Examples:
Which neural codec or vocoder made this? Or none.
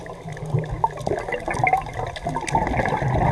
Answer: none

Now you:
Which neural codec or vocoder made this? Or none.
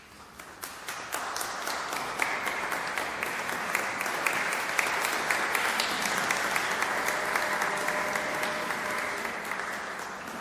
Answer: none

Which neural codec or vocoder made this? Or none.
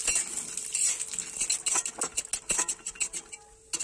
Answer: none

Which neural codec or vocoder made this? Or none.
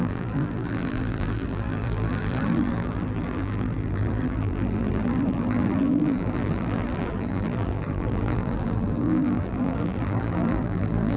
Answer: vocoder, BigVGAN v2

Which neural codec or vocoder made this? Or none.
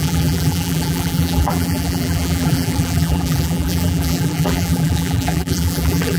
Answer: vocoder, BigVGAN v2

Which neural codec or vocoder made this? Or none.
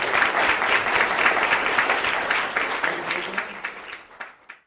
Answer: vocoder, BigVGAN v2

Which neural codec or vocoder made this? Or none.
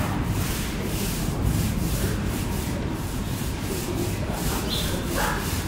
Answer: vocoder, BigVGAN v2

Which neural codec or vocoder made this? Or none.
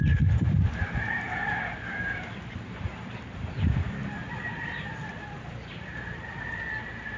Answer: vocoder, BigVGAN v2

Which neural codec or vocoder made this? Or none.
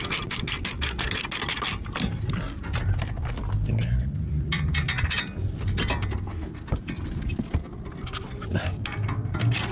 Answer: none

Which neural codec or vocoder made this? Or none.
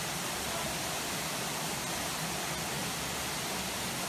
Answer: none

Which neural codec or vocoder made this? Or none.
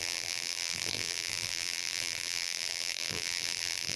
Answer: vocoder, BigVGAN v2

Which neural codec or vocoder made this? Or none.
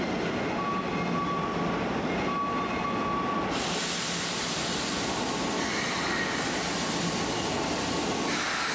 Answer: none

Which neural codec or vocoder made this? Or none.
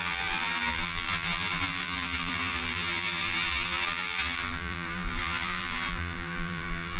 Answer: vocoder, BigVGAN v2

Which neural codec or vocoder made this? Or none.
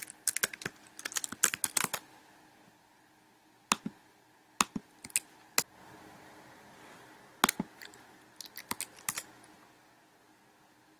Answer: none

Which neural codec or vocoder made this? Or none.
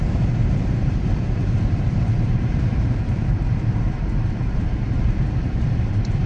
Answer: vocoder, BigVGAN v2